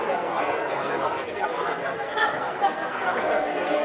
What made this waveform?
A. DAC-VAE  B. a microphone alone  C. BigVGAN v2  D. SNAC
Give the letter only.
D